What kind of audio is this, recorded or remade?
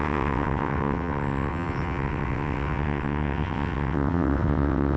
remade